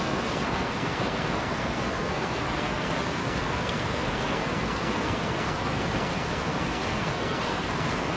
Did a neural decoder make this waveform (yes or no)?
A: yes